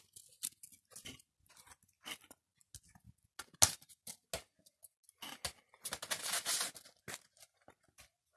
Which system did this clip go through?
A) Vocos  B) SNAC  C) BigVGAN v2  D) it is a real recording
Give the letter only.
D